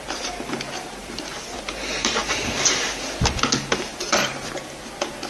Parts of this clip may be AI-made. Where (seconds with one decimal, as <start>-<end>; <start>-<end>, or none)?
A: 1.0-3.5; 3.9-4.5